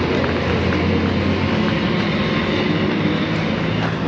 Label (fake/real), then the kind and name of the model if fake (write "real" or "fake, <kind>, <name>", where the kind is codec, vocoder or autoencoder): real